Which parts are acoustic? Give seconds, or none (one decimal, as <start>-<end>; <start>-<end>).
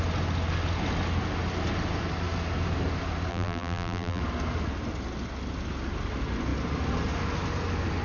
0.0-3.3; 4.2-8.0